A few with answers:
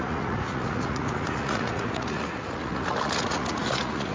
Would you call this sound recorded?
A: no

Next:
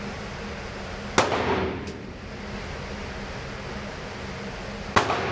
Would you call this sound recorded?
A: yes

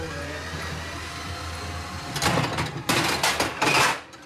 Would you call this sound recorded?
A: yes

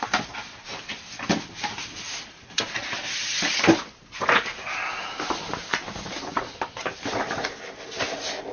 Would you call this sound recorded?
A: yes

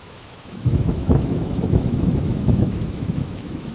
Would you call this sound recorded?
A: no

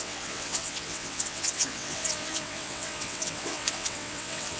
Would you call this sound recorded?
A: no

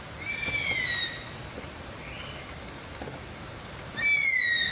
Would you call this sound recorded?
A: yes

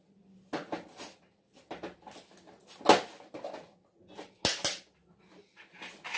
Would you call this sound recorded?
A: yes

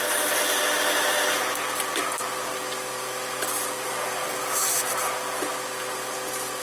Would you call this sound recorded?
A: yes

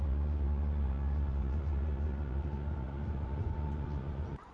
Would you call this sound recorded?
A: no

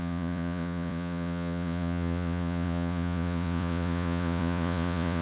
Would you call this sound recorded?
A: no